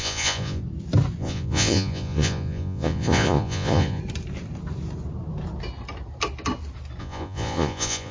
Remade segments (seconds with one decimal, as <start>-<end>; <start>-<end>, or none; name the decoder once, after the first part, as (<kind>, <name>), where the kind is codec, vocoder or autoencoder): 0.0-0.6 (vocoder, Vocos); 1.2-4.0; 7.0-8.1